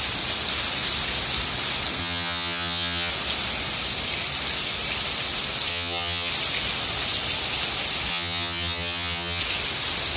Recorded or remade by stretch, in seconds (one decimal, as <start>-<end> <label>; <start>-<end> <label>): 0.0-2.0 recorded; 2.0-3.1 remade; 3.1-5.7 recorded; 5.7-6.3 remade; 6.3-8.1 recorded; 8.1-9.4 remade; 9.4-10.2 recorded